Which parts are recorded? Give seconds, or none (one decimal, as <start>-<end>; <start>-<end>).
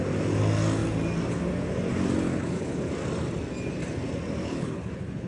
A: 0.0-2.3; 2.9-4.4